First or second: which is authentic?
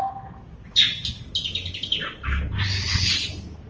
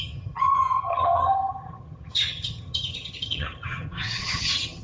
first